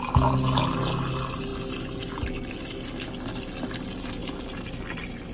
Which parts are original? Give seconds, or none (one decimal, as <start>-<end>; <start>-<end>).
0.0-5.3